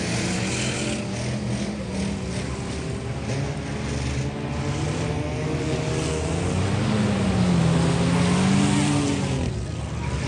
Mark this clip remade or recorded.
recorded